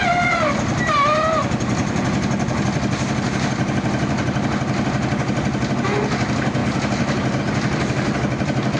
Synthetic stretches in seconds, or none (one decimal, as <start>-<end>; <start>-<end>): none